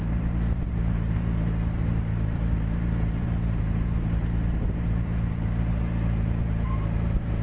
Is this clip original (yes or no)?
no